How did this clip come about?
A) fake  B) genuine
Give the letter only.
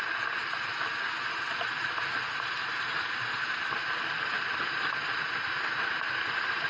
B